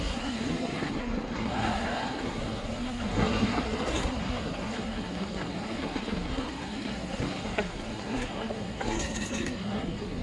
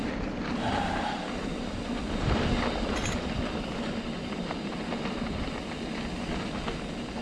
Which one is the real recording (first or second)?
second